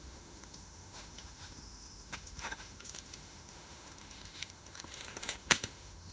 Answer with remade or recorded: remade